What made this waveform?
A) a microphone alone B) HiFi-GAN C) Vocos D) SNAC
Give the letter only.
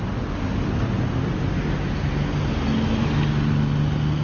A